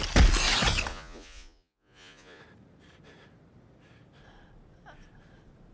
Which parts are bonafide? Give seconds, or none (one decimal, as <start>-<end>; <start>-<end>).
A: 0.0-0.9; 2.4-5.7